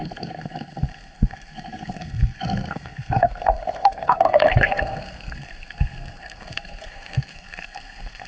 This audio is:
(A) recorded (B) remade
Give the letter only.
B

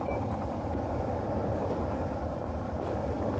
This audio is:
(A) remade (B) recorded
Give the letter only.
B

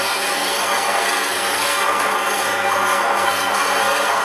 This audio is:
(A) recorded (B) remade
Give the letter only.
B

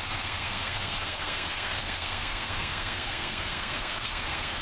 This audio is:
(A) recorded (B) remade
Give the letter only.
B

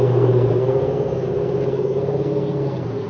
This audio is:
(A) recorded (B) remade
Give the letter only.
B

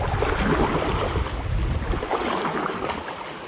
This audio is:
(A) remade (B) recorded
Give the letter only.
B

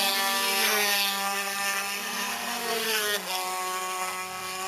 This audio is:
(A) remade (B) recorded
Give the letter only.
A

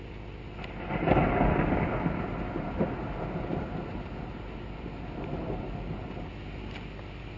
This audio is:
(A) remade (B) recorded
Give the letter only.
B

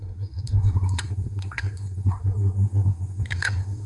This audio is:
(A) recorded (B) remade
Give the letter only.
B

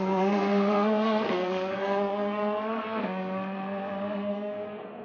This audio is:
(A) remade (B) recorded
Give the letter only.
A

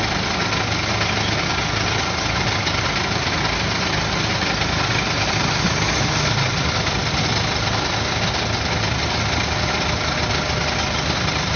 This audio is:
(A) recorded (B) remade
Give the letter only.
A